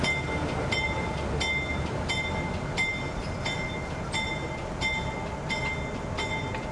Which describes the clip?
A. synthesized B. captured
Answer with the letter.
B